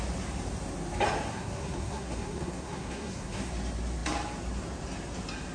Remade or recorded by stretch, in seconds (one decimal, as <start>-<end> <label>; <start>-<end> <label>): 0.0-1.3 recorded; 1.3-3.5 remade; 3.5-5.5 recorded